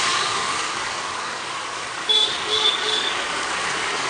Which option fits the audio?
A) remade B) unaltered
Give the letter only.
A